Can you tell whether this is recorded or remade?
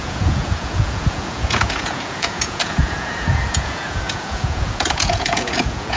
remade